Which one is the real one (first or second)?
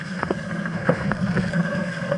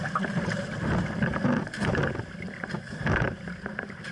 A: second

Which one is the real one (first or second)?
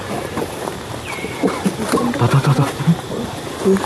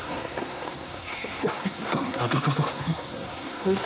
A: first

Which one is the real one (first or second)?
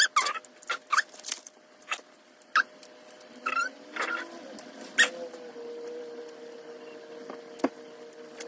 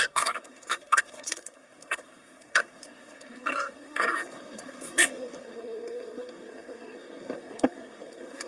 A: first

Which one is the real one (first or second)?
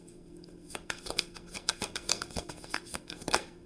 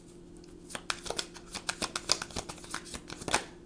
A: second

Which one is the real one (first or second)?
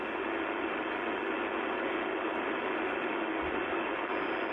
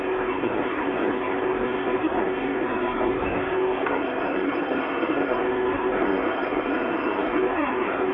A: first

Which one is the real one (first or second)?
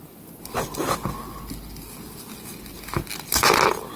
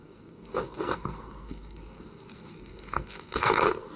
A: first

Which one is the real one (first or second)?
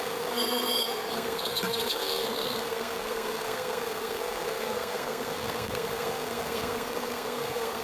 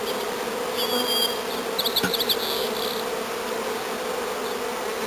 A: second